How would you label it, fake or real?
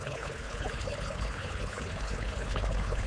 fake